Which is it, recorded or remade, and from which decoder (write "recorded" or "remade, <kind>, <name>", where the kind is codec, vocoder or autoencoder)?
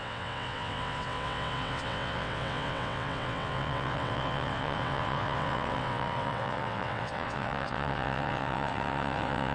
remade, vocoder, WaveNeXt